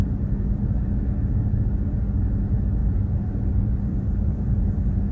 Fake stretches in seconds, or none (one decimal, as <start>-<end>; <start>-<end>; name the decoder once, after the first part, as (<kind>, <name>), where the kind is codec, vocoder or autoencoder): 2.8-5.1 (vocoder, BigVGAN v2)